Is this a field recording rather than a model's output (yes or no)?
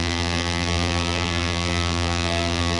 no